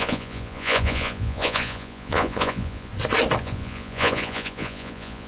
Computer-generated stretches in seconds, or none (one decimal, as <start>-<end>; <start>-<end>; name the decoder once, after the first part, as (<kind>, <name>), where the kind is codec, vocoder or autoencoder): 0.0-2.9 (vocoder, Vocos); 3.4-5.3